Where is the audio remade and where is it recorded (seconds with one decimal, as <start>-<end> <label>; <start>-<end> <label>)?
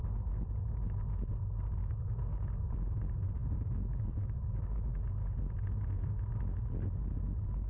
0.0-1.8 recorded; 1.8-2.3 remade; 2.3-7.7 recorded